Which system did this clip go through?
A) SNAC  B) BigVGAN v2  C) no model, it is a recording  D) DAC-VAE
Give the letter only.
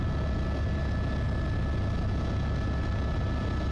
C